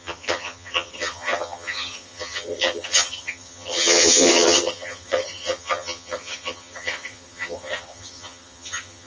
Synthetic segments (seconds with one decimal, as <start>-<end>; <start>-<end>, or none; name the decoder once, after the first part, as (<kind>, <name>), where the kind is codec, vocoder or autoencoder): 0.0-9.1 (vocoder, HiFi-GAN)